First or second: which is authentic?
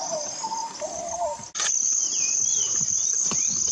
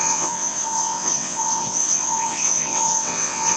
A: first